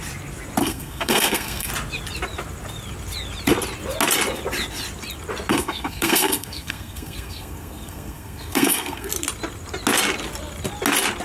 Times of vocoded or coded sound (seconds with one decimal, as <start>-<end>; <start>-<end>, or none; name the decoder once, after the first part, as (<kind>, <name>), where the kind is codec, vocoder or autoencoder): 0.6-1.7 (codec, SNAC); 5.5-9.1